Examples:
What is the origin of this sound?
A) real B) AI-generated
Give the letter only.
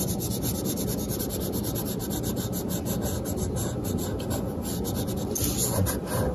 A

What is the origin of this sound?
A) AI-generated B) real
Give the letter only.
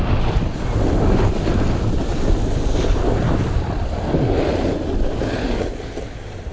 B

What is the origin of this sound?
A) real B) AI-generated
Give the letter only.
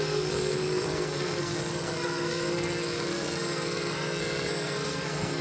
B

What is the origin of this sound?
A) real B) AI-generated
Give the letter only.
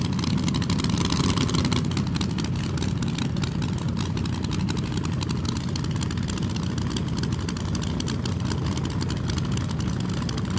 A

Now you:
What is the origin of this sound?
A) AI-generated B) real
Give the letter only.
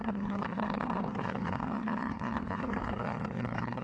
A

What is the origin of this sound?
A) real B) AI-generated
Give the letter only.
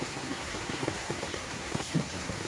B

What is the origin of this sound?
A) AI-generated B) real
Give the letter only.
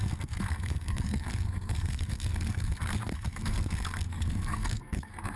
A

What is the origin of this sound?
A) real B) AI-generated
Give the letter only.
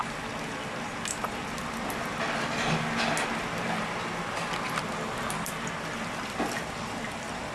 A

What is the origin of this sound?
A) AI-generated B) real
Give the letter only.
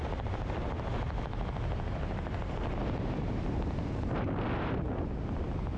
B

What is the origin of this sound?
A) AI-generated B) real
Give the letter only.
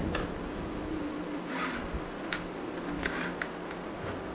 B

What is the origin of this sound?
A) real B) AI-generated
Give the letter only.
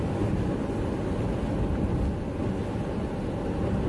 A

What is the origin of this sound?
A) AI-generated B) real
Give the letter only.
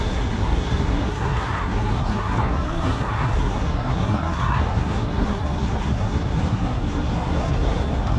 A